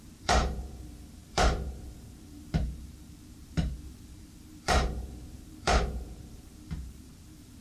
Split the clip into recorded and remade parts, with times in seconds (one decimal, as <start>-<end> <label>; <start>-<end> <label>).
0.0-7.6 remade